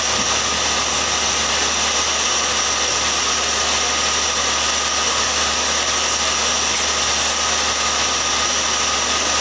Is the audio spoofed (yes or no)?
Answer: no